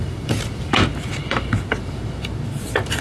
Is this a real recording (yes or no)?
no